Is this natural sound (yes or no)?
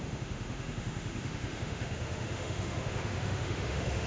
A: no